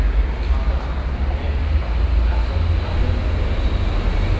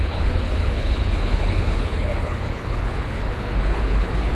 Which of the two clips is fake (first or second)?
second